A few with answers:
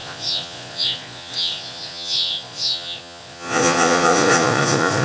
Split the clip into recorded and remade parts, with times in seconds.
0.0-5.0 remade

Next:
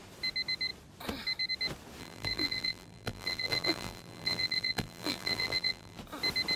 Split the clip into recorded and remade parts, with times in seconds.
0.0-2.0 recorded; 2.0-6.0 remade; 6.0-6.6 recorded